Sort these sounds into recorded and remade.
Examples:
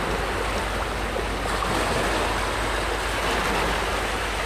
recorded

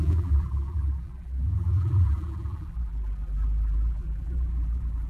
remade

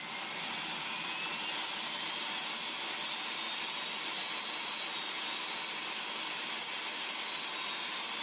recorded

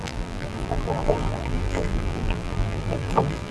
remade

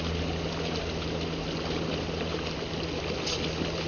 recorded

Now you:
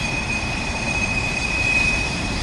remade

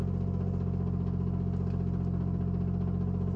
recorded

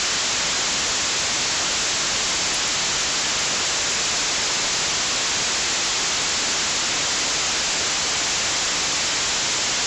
recorded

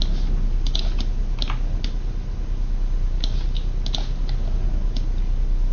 recorded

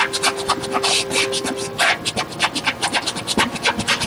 recorded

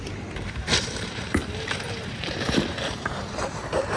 remade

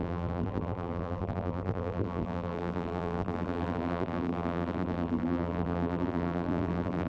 remade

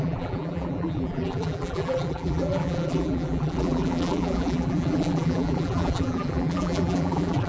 remade